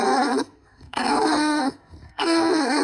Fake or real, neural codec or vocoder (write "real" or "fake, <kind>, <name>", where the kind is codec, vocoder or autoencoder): fake, codec, SNAC